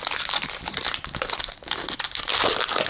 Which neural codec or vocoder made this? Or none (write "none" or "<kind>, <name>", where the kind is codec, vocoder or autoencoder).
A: none